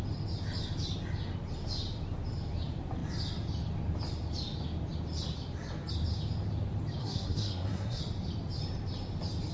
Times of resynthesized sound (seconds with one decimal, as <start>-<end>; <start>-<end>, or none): 7.0-8.0